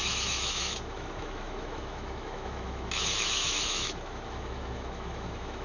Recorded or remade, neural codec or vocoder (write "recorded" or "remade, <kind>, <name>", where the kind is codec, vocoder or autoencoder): remade, autoencoder, DAC-VAE